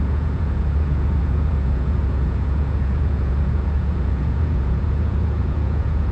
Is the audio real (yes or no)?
no